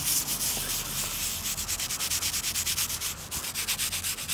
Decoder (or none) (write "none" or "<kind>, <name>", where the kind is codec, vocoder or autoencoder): none